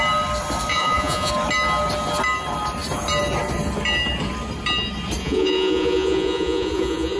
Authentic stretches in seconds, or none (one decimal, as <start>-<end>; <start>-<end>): 0.0-0.7; 1.3-5.2